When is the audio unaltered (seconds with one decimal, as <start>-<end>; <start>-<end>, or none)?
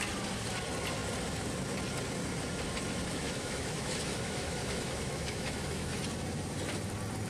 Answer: 0.0-3.1; 6.0-7.3